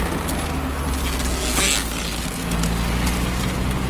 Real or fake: real